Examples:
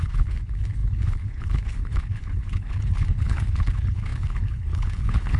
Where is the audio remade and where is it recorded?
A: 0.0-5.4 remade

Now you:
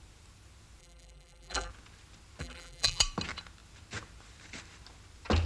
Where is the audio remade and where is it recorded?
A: 0.0-0.8 recorded; 0.8-1.7 remade; 1.7-2.4 recorded; 2.4-3.0 remade; 3.0-5.5 recorded

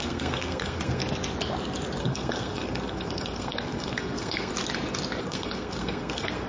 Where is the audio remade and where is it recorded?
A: 0.0-1.0 remade; 1.0-2.0 recorded; 2.0-4.5 remade; 4.5-5.2 recorded; 5.2-6.5 remade

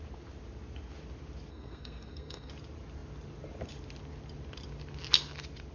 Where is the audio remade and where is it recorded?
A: 0.0-1.5 recorded; 1.5-2.5 remade; 2.5-5.7 recorded

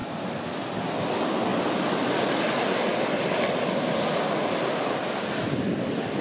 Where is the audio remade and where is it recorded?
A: 0.0-6.2 recorded

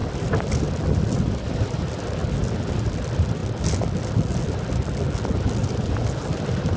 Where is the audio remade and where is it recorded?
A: 0.0-6.8 recorded

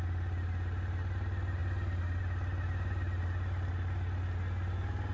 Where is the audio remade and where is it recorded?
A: 0.0-5.1 recorded

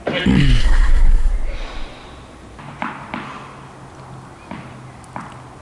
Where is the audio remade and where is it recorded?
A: 0.0-0.6 recorded; 0.6-1.3 remade; 1.3-5.6 recorded